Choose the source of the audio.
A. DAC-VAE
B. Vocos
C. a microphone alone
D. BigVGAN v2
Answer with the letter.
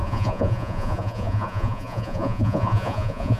B